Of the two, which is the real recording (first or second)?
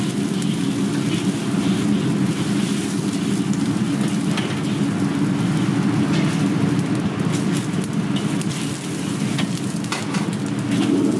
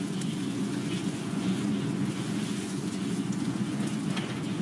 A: first